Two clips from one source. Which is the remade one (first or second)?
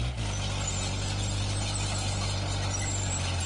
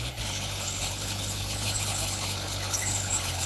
second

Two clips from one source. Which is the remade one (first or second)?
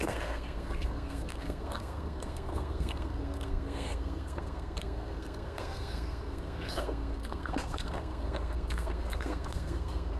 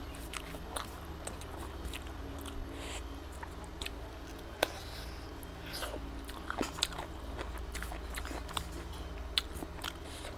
first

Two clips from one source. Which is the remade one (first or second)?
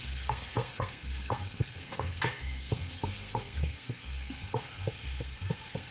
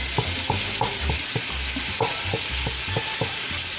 first